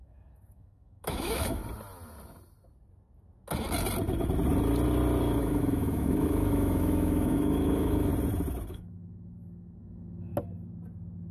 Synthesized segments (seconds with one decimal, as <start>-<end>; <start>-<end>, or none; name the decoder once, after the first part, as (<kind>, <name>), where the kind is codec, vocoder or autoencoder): 0.0-1.6 (autoencoder, DAC-VAE); 5.4-8.1; 8.7-10.3